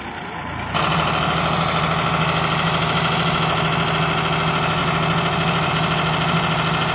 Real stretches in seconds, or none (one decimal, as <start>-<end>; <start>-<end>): 0.0-6.9